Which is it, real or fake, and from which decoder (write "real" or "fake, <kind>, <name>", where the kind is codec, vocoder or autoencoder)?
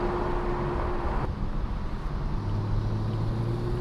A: real